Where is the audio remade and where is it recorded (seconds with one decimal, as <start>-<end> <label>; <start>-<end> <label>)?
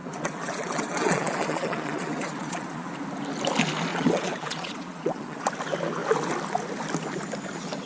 0.0-2.9 remade; 2.9-3.9 recorded; 3.9-5.5 remade; 5.5-7.9 recorded